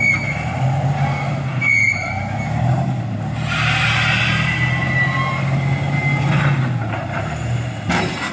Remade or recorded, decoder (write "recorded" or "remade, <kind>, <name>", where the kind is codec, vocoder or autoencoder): recorded